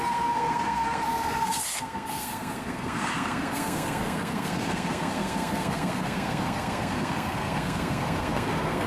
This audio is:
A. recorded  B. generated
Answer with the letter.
B